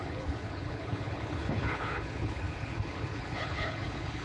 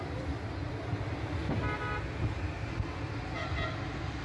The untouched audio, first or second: second